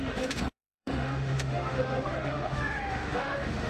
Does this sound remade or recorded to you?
remade